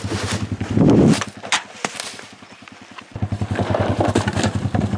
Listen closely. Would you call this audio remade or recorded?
recorded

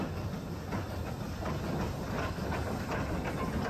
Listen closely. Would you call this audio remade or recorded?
recorded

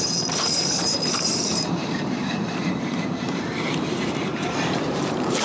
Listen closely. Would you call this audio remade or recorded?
remade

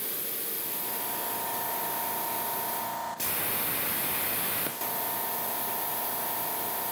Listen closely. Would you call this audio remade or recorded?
recorded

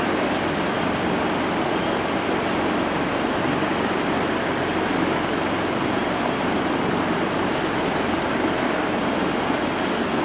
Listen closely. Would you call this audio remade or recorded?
remade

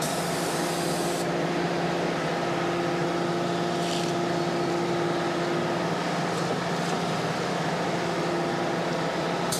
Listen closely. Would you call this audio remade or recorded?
recorded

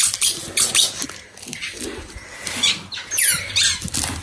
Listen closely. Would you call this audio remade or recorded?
recorded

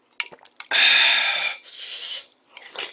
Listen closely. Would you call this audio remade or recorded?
recorded